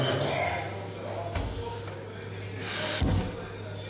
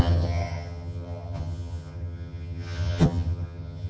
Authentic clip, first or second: first